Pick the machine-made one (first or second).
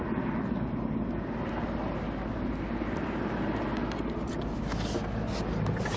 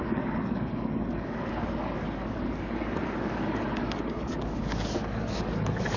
second